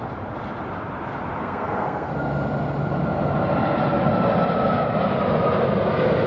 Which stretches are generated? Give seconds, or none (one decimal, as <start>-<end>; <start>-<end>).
1.4-2.1